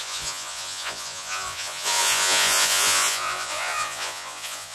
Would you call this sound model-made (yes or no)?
yes